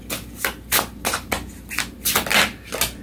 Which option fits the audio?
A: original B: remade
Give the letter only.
A